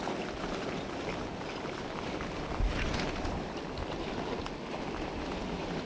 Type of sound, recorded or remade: recorded